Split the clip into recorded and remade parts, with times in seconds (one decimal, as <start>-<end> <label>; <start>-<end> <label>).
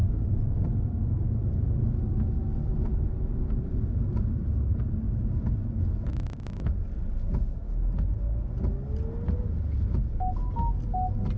0.0-0.7 remade; 0.7-1.4 recorded; 1.4-2.4 remade; 2.4-2.9 recorded; 2.9-5.5 remade; 5.5-11.4 recorded